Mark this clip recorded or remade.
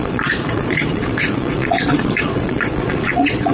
remade